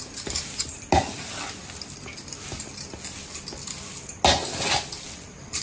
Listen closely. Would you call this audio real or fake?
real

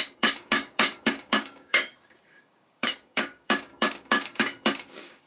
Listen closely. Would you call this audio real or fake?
fake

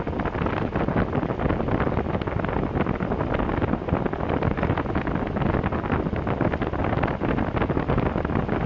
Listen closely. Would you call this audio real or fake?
real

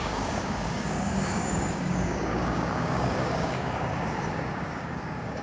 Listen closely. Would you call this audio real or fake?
fake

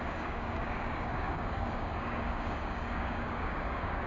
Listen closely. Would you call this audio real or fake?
fake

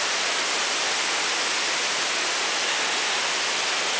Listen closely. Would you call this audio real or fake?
real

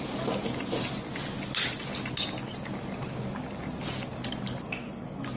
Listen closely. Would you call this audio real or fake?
real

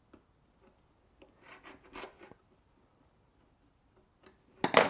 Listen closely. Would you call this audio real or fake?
real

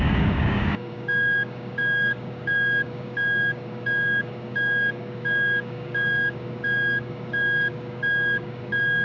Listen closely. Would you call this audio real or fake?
fake